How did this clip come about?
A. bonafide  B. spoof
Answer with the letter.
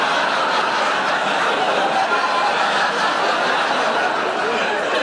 A